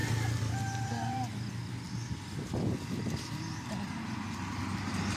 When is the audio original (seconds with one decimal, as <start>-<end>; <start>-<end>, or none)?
0.0-5.2